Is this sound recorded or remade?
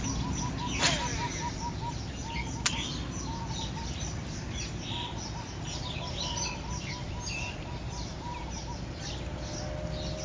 recorded